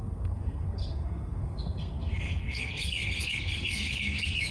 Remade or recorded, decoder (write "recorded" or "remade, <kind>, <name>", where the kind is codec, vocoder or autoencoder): remade, codec, SNAC